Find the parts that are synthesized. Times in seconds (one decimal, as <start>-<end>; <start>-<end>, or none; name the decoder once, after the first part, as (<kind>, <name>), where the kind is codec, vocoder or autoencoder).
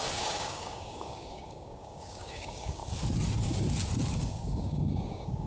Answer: 0.0-2.8 (codec, DAC); 4.1-5.5